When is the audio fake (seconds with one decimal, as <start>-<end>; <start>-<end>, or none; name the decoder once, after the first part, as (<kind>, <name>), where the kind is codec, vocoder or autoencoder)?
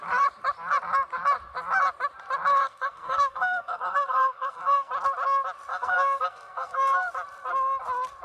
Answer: 2.5-4.9 (codec, SNAC); 5.7-7.1